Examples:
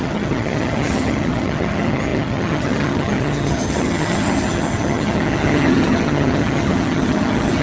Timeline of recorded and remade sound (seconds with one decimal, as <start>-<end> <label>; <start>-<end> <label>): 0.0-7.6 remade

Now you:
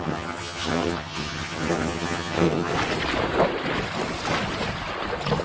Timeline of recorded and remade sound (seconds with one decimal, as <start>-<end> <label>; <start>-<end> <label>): 0.0-2.7 remade; 2.7-5.4 recorded

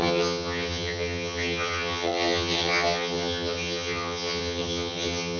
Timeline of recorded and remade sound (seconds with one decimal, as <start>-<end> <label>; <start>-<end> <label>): 0.0-5.4 remade